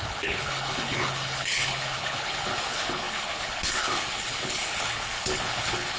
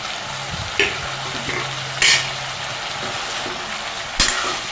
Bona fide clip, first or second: second